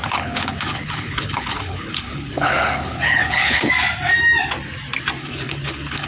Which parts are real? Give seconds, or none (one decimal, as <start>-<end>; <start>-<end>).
3.7-5.2